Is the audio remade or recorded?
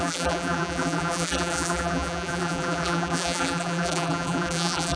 remade